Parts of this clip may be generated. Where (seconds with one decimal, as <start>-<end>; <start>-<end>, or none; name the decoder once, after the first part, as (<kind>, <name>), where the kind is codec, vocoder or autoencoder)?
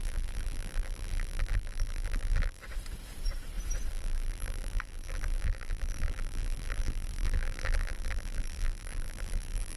0.0-2.6 (vocoder, BigVGAN v2); 3.9-9.8